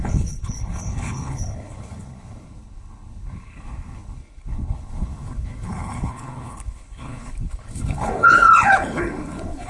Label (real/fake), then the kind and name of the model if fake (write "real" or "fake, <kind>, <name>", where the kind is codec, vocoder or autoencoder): fake, codec, HILCodec